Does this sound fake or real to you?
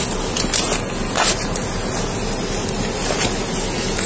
real